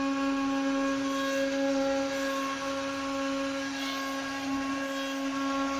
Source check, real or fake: real